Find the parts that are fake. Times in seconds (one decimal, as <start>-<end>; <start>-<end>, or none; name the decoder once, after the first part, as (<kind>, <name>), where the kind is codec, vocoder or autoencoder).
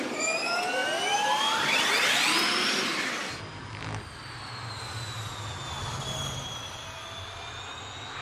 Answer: none